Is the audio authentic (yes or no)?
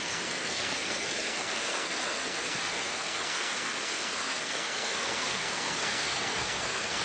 no